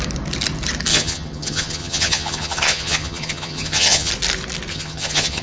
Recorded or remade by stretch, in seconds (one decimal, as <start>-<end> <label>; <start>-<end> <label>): 0.0-0.9 recorded; 0.9-4.1 remade; 4.1-4.7 recorded; 4.7-5.4 remade

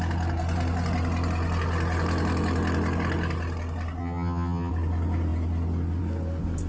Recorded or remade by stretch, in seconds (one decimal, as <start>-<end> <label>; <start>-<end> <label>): 0.0-4.0 recorded; 4.0-4.7 remade; 4.7-6.7 recorded

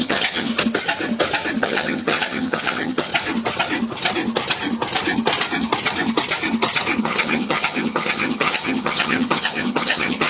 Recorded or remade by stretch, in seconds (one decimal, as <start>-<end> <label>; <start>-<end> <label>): 0.0-0.5 remade; 0.5-1.6 recorded; 1.6-3.1 remade; 3.1-7.0 recorded; 7.0-10.3 remade

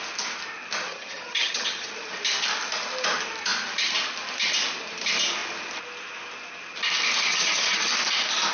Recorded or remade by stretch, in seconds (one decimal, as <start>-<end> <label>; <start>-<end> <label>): 0.0-0.9 recorded; 0.9-1.9 remade; 1.9-7.3 recorded; 7.3-7.9 remade; 7.9-8.5 recorded

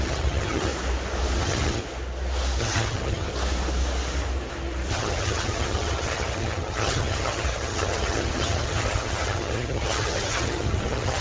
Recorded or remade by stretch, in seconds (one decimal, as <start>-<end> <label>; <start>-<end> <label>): 0.0-0.7 remade; 0.7-1.4 recorded; 1.4-1.8 remade; 1.8-2.6 recorded; 2.6-3.3 remade; 3.3-4.9 recorded; 4.9-11.2 remade